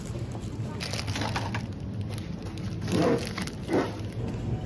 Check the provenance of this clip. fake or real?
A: real